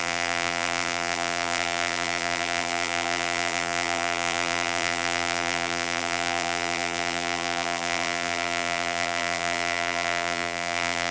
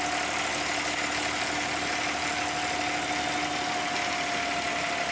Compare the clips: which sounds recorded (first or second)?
second